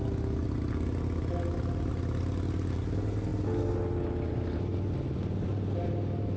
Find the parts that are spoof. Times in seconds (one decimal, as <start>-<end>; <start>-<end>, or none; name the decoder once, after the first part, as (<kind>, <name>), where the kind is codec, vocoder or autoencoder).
none